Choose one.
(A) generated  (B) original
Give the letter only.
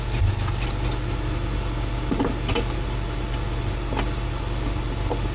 B